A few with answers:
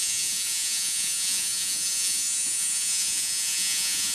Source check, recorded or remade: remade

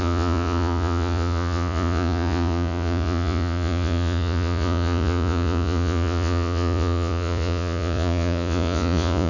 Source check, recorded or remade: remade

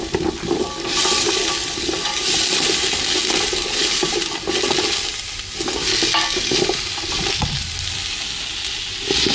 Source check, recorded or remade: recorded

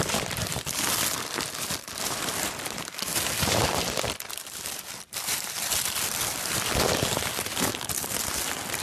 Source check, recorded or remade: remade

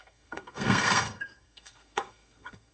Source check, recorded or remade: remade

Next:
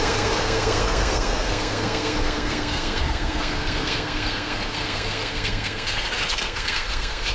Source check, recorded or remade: remade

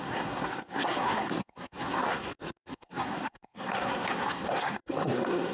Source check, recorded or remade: remade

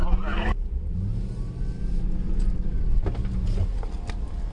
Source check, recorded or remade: recorded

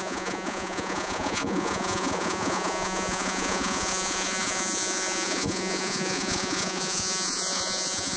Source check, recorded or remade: remade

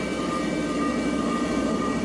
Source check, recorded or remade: remade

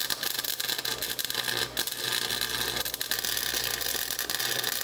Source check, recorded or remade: recorded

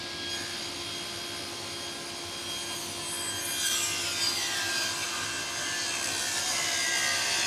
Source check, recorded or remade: recorded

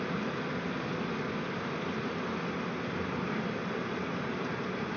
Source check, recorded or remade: recorded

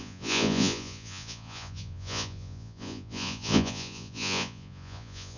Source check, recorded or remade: remade